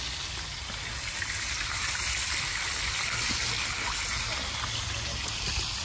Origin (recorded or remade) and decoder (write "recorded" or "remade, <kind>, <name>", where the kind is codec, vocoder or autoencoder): recorded